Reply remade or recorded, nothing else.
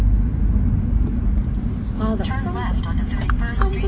recorded